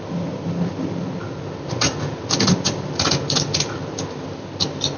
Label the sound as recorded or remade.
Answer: recorded